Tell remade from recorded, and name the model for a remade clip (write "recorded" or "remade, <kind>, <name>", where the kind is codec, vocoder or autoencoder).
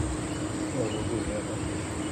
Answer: recorded